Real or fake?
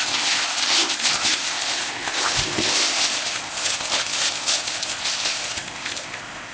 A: fake